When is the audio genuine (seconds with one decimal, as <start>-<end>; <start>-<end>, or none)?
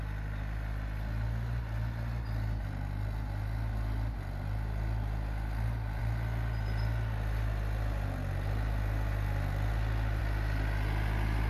0.0-11.5